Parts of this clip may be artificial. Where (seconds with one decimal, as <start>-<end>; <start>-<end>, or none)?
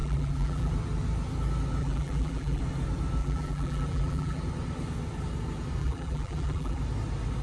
0.0-0.7; 1.8-2.6; 3.2-4.4; 5.8-6.8